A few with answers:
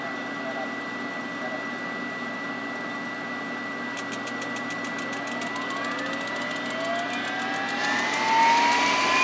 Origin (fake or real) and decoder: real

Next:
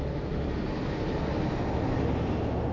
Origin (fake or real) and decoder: real